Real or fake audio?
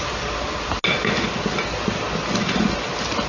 real